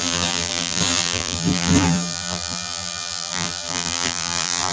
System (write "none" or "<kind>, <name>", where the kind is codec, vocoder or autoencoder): vocoder, BigVGAN v2